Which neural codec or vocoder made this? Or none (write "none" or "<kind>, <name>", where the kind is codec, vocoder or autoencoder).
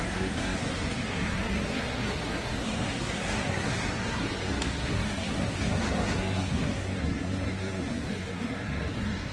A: codec, SNAC